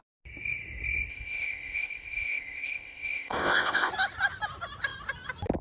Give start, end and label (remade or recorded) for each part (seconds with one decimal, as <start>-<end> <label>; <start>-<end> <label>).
0.0-1.1 recorded; 1.1-3.9 remade; 3.9-5.6 recorded